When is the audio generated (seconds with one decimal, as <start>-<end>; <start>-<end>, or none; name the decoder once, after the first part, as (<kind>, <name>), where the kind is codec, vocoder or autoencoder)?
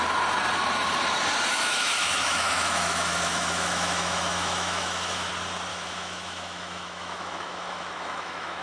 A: 1.5-5.3 (autoencoder, DAC-VAE); 5.7-8.6